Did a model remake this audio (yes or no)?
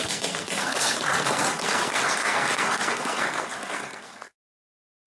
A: yes